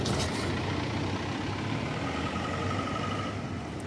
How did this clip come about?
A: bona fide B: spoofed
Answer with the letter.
A